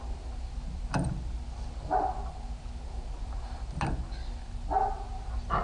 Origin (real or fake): real